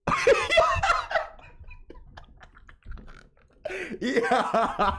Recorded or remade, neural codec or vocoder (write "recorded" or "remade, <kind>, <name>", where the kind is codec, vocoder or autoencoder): recorded